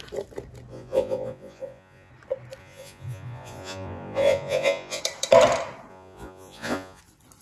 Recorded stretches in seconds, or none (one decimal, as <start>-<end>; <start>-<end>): 0.0-0.7; 2.1-2.6; 5.0-5.9; 7.0-7.4